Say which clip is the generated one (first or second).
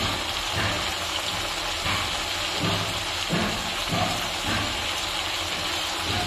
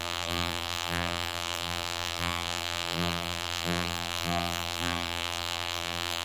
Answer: second